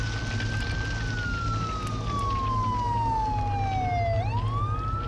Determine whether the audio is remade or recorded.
recorded